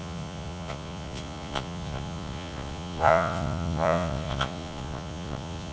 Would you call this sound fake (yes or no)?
yes